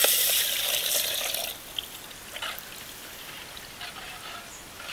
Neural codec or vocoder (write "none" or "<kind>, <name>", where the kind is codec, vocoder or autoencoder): none